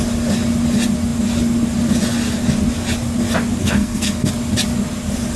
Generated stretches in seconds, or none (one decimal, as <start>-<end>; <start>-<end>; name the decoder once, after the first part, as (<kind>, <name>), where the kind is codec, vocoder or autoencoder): 3.6-4.3 (codec, SNAC)